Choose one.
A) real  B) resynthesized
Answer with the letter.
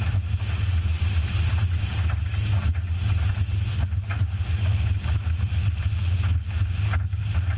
A